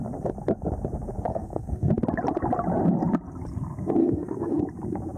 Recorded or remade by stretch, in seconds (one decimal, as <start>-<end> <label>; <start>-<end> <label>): 0.0-1.3 recorded; 1.3-1.9 remade; 1.9-4.0 recorded; 4.0-4.6 remade; 4.6-5.2 recorded